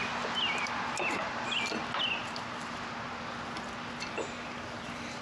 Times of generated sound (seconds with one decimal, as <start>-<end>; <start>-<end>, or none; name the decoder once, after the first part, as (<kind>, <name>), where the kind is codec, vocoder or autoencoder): none